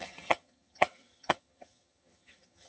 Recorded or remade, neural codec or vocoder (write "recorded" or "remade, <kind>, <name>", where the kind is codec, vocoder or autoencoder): remade, vocoder, HiFi-GAN